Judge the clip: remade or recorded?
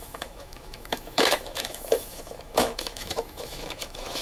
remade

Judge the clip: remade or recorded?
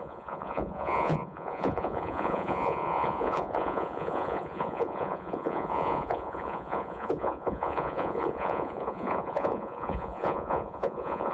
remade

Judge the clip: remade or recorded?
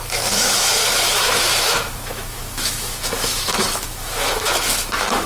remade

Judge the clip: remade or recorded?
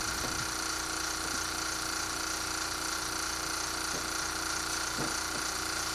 recorded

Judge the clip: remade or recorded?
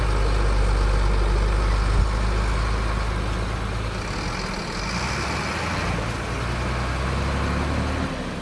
recorded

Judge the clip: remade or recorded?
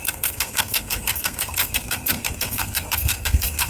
remade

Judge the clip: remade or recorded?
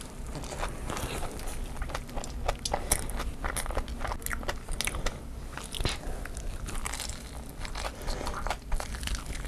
recorded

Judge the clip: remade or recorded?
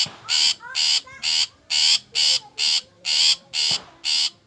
recorded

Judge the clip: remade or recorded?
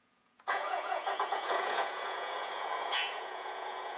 remade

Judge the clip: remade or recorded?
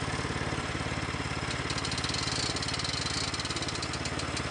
recorded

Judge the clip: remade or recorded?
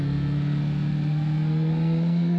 remade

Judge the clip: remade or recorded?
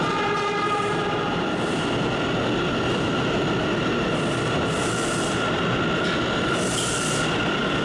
recorded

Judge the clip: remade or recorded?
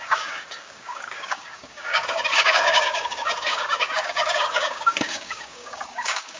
remade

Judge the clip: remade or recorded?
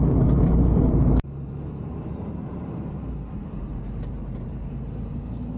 remade